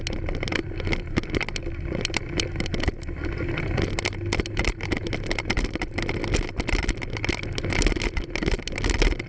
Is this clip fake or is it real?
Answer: real